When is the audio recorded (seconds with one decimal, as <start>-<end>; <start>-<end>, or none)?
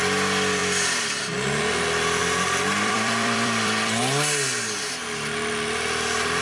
0.0-0.6; 1.2-2.2; 4.0-6.4